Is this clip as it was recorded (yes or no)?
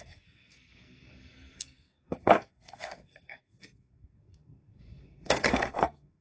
no